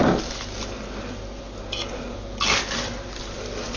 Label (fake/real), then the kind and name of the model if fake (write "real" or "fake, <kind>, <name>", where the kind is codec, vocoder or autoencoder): real